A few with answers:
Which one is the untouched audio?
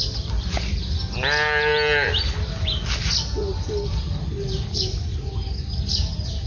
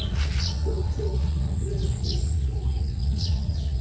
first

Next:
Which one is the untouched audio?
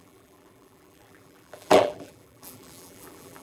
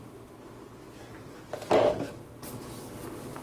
second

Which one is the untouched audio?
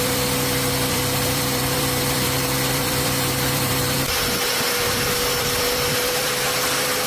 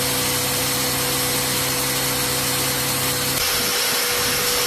second